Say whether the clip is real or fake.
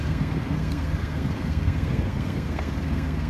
fake